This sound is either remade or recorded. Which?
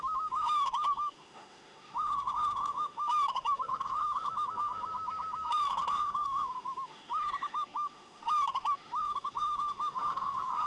remade